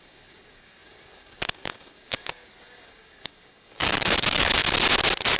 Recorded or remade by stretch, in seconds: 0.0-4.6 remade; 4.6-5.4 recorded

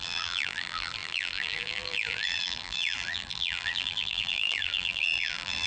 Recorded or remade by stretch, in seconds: 0.0-5.7 remade

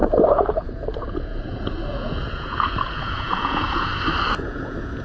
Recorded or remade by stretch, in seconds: 0.0-3.9 remade; 3.9-4.4 recorded; 4.4-5.0 remade

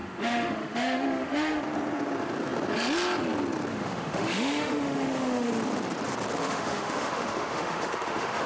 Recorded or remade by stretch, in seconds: 0.0-1.6 remade; 1.6-3.7 recorded; 3.7-5.5 remade; 5.5-6.4 recorded; 6.4-8.5 remade

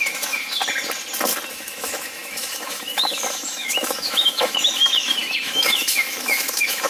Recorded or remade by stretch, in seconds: 0.0-0.6 remade; 0.6-1.5 recorded; 1.5-6.9 remade